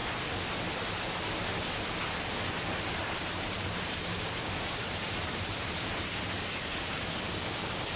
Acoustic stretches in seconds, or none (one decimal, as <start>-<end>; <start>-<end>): 0.0-3.0; 7.1-8.0